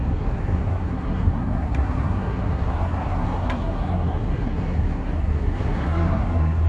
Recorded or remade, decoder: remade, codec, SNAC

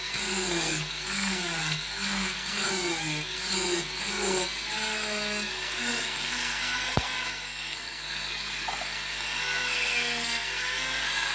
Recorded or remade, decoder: remade, codec, SNAC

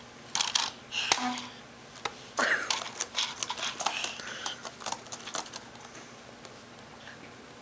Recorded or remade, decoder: recorded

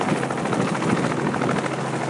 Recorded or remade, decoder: recorded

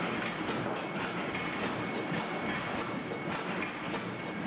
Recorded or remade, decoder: recorded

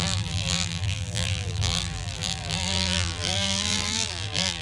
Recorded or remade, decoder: remade, vocoder, BigVGAN v2